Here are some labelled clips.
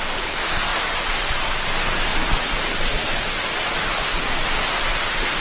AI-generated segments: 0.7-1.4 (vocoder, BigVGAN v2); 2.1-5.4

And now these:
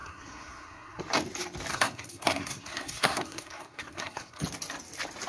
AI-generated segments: 0.0-1.0 (codec, SNAC); 1.7-4.4

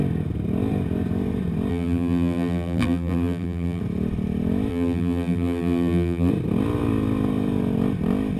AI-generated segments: 1.7-3.8 (vocoder, BigVGAN v2); 4.7-6.3